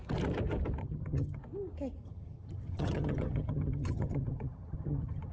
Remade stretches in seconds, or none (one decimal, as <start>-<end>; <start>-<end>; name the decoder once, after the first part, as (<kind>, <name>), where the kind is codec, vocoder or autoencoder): 0.8-1.4 (vocoder, HiFi-GAN); 2.0-5.3